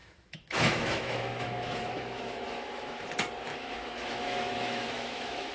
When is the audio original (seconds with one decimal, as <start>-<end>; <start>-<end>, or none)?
3.1-3.5